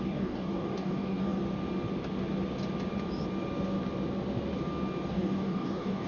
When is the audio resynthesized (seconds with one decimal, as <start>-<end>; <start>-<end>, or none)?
0.0-1.4; 5.1-6.1